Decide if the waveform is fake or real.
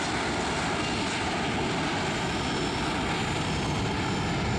real